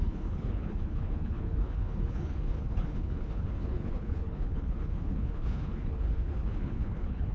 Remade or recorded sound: remade